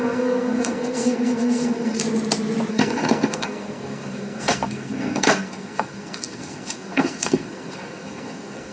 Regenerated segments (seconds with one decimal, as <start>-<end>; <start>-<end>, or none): 0.0-2.0; 2.7-8.7